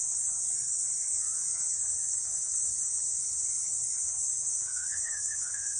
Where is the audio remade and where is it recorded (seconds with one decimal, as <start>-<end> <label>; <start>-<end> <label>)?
0.0-5.8 remade